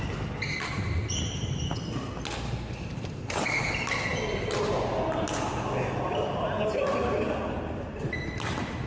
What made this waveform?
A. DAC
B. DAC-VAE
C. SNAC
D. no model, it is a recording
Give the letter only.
D